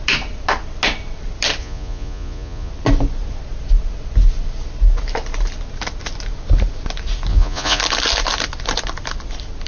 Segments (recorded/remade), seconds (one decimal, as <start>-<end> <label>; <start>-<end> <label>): 0.0-1.6 recorded; 1.6-2.7 remade; 2.7-7.3 recorded; 7.3-7.8 remade; 7.8-9.7 recorded